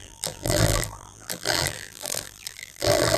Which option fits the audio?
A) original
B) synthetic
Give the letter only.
B